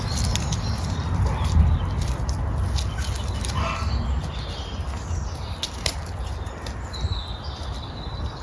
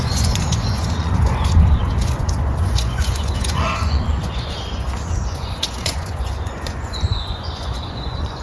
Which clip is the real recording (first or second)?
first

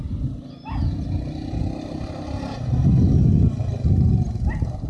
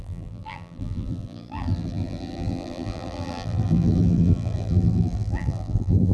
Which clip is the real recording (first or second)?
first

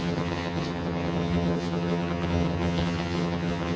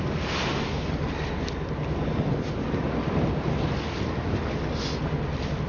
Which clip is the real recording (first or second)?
second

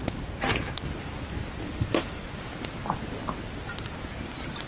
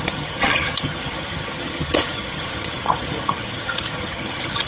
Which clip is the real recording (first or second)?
first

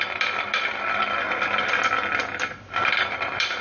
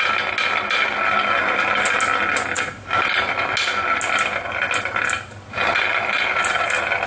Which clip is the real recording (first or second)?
second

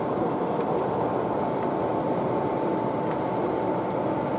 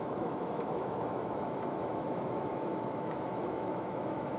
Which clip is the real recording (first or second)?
first